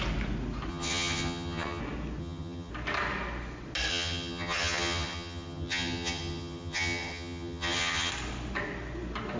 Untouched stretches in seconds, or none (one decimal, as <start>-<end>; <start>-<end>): 0.0-0.7; 1.8-2.2; 2.7-3.9; 8.1-9.4

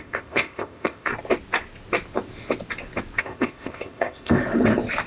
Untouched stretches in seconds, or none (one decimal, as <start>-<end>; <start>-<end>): 1.1-3.2; 4.4-5.1

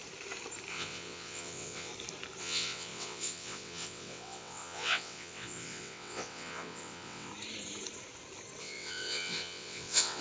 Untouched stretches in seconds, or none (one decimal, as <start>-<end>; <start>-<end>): 0.0-0.7; 1.9-2.4; 7.3-8.6

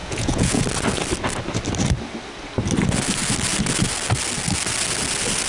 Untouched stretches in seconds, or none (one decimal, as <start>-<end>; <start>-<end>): 0.6-5.5